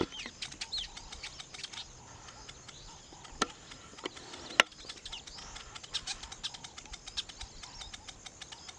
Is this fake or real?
real